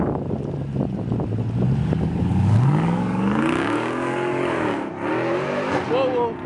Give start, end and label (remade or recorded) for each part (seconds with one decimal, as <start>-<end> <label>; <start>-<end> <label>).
0.0-1.8 recorded; 1.8-4.9 remade; 4.9-6.5 recorded